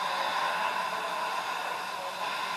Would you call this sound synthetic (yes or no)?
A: no